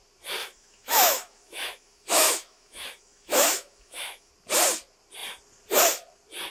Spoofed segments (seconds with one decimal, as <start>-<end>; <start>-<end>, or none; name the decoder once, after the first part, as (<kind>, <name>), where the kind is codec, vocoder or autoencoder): 0.4-4.3 (autoencoder, DAC-VAE)